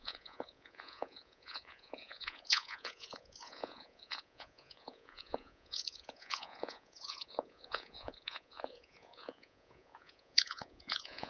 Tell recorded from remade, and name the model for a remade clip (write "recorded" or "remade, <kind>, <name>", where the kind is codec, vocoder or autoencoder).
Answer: remade, vocoder, Vocos